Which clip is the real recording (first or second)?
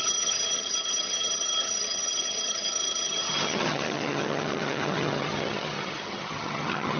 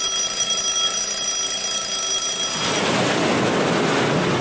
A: second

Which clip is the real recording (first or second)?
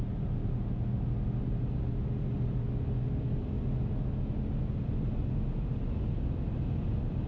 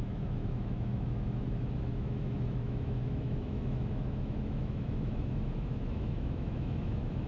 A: first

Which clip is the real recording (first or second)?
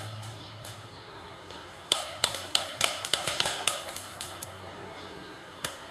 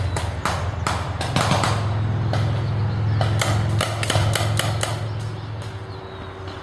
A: second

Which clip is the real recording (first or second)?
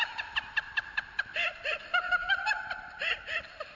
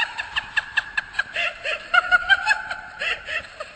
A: first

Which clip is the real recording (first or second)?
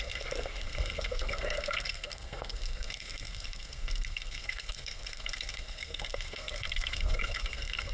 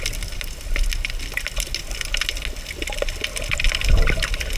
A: second